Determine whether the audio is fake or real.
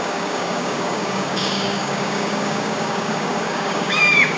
fake